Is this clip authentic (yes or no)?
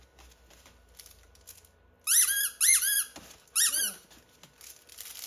yes